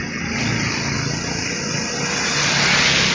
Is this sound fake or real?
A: real